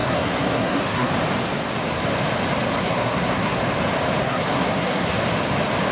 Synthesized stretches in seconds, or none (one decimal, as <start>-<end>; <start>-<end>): 0.0-1.1; 2.8-3.6; 4.2-5.2